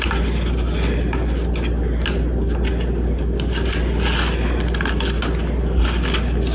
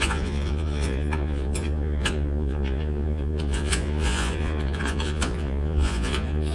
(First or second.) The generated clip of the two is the second